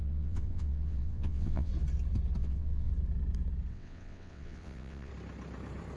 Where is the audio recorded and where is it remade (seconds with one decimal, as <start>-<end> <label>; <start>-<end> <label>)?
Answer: 0.0-1.7 remade; 1.7-2.4 recorded; 2.4-2.9 remade; 2.9-3.7 recorded; 3.7-5.1 remade; 5.1-6.0 recorded